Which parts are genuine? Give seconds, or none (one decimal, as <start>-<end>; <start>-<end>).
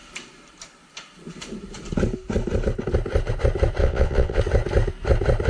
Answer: 0.0-3.8; 4.4-5.5